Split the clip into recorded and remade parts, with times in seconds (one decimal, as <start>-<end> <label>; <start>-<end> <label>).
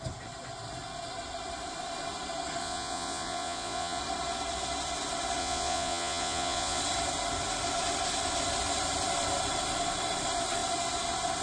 0.0-2.6 recorded; 2.6-4.0 remade; 4.0-5.4 recorded; 5.4-6.8 remade; 6.8-11.4 recorded